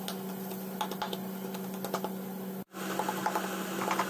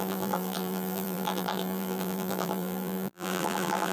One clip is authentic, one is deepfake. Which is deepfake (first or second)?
second